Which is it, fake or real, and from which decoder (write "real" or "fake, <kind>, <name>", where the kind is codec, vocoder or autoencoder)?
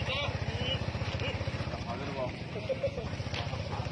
real